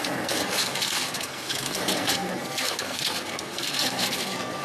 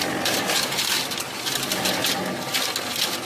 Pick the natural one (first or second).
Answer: second